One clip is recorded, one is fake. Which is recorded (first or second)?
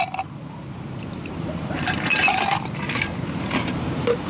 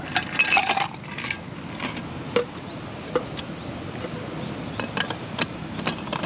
second